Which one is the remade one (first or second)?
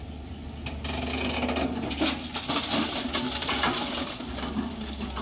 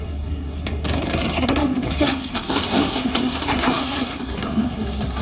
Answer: second